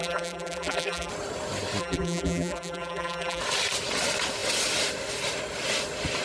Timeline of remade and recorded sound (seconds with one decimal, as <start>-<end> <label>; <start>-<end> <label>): 0.0-1.1 remade; 1.1-1.8 recorded; 1.8-3.4 remade; 3.4-6.2 recorded